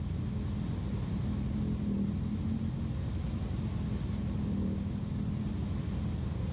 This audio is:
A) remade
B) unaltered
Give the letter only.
B